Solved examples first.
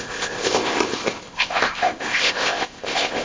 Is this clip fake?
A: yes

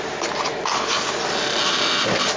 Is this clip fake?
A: no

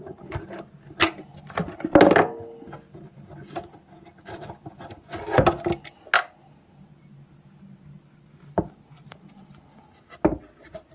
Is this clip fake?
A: no